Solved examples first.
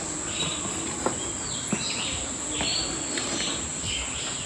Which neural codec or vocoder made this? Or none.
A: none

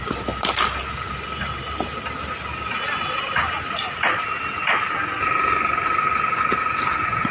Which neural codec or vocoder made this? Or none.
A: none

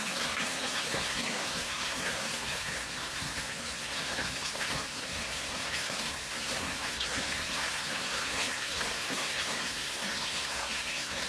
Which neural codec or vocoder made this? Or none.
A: codec, SNAC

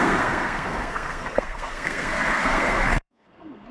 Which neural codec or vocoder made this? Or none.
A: codec, SNAC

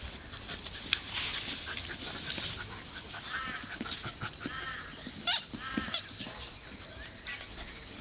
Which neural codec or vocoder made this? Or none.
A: none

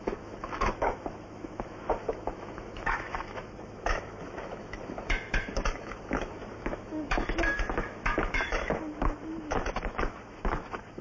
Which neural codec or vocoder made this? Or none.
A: autoencoder, DAC-VAE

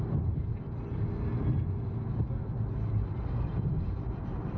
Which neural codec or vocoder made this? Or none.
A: none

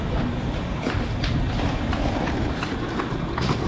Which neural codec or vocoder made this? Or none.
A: none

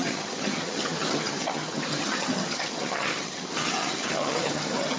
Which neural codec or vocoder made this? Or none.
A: vocoder, HiFi-GAN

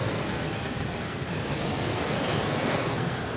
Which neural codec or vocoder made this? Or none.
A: codec, SNAC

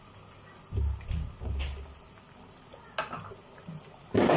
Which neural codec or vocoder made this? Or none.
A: none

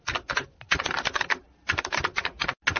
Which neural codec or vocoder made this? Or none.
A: none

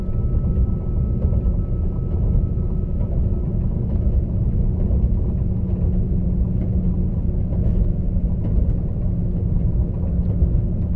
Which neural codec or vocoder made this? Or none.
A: none